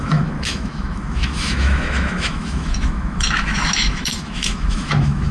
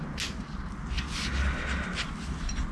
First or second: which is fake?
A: first